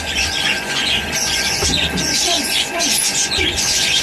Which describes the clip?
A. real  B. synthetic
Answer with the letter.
B